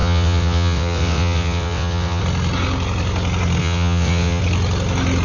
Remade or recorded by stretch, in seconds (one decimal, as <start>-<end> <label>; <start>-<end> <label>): 0.0-2.2 remade; 2.2-3.6 recorded; 3.6-4.4 remade; 4.4-5.2 recorded